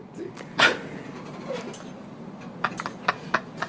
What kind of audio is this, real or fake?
real